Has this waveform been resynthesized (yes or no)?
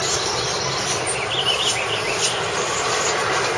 no